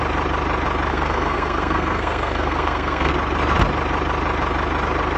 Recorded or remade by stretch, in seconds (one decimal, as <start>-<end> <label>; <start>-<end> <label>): 0.0-0.9 recorded; 0.9-3.1 remade; 3.1-5.2 recorded